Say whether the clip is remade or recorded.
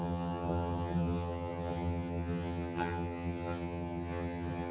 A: remade